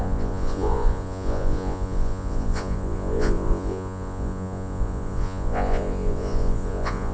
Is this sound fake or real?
fake